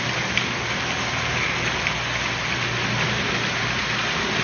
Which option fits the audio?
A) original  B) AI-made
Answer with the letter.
A